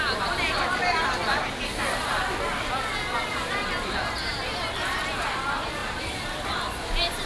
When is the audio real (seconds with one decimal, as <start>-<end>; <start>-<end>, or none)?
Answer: 0.0-5.8